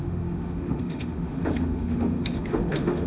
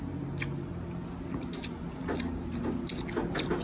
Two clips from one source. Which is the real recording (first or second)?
second